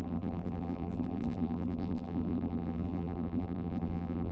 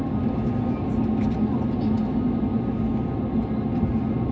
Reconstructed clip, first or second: first